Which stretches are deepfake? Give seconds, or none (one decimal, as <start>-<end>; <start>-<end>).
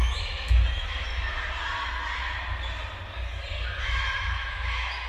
0.0-1.1; 3.8-5.1